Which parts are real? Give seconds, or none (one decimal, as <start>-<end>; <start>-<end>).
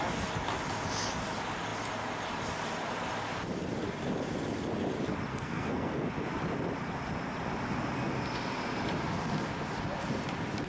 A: 0.0-5.3; 6.1-10.7